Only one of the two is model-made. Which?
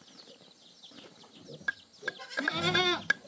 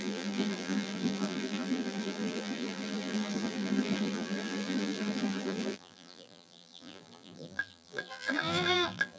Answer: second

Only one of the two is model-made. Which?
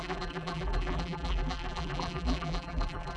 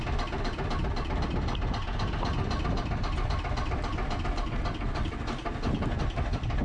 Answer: first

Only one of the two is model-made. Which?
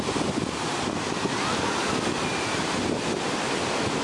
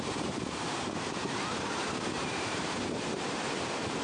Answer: second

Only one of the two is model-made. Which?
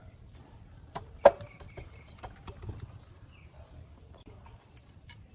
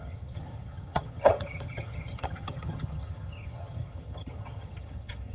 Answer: second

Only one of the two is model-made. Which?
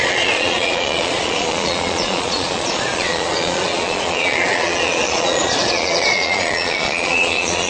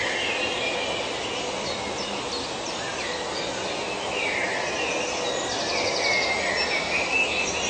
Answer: first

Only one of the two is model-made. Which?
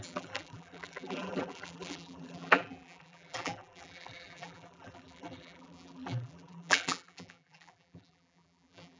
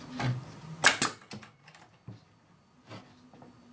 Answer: first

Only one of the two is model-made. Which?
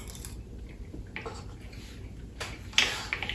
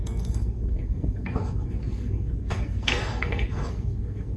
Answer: second